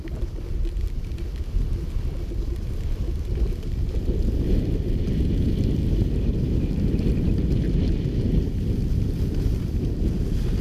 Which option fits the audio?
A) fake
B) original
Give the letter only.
B